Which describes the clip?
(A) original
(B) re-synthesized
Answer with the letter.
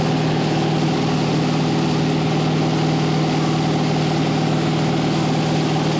A